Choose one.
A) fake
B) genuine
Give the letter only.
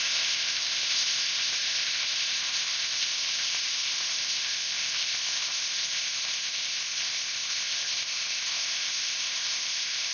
A